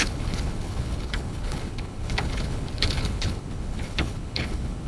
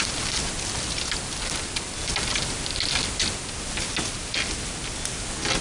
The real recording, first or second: second